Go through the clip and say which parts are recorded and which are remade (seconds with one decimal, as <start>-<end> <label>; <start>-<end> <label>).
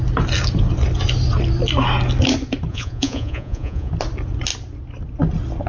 0.0-2.7 recorded; 2.7-3.9 remade; 3.9-5.7 recorded